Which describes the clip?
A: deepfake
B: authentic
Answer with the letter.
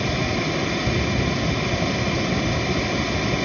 B